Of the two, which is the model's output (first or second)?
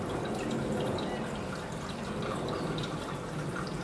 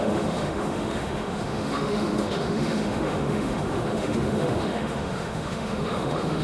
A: second